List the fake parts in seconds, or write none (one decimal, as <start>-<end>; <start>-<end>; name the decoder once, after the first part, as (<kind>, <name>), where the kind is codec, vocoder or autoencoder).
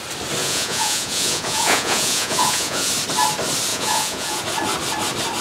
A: 0.4-2.9 (vocoder, Vocos); 3.7-4.4